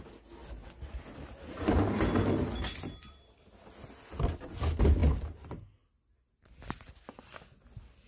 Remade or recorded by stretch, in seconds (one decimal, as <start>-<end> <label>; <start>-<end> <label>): 0.0-8.1 recorded